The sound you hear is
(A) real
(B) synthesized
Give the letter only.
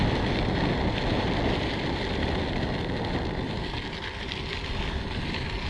A